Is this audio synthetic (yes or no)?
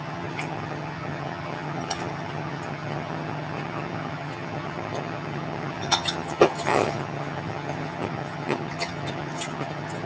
yes